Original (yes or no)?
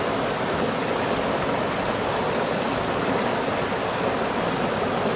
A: yes